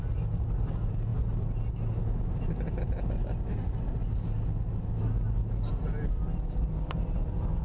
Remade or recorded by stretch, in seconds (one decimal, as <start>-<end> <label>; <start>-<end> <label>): 0.0-7.6 recorded